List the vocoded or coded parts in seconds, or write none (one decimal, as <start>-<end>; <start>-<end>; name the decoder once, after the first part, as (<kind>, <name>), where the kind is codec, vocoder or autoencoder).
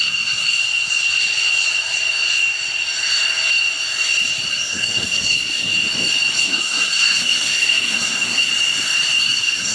0.0-0.6 (codec, SNAC); 4.5-5.7; 6.4-8.5; 9.2-9.7